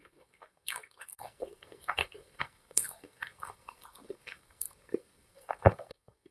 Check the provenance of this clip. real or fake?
fake